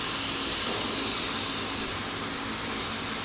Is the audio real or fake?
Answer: real